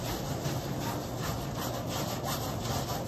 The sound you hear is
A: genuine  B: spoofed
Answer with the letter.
A